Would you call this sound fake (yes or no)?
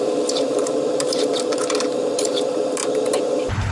yes